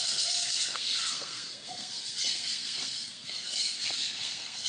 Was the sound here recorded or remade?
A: remade